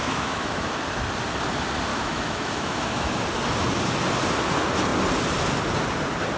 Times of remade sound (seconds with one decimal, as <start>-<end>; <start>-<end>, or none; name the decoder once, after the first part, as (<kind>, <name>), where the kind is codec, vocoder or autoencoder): 0.0-0.7 (autoencoder, DAC-VAE); 1.9-3.2

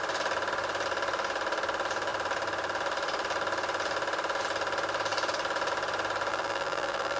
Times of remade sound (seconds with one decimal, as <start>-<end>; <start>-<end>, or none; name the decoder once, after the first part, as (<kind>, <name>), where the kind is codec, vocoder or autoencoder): 6.3-7.2 (vocoder, BigVGAN v2)

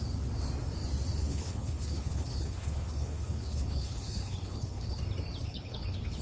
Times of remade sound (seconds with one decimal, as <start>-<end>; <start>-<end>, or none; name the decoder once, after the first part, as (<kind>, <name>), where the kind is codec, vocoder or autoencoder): 1.3-5.0 (codec, HILCodec); 5.4-6.2

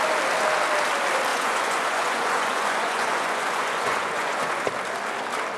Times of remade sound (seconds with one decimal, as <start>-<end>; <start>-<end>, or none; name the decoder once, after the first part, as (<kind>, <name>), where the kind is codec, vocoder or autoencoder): 1.3-4.7 (vocoder, Vocos)